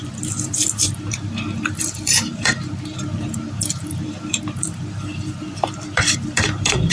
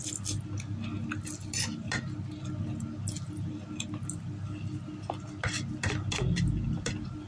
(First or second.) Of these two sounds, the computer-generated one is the first